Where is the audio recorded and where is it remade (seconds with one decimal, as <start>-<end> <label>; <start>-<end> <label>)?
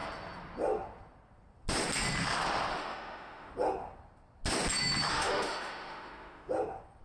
0.0-2.7 recorded; 2.7-3.5 remade; 3.5-5.1 recorded; 5.1-6.5 remade; 6.5-7.0 recorded